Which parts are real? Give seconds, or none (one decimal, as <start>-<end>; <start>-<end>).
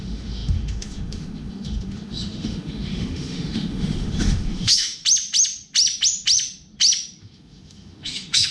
5.0-7.2